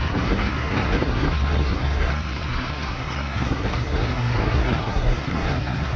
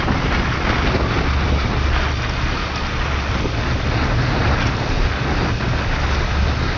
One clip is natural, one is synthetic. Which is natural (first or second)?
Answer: second